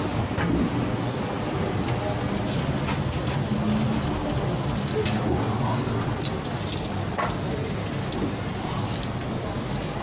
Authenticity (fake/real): real